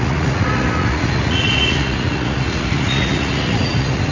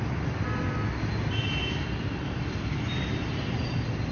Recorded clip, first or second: second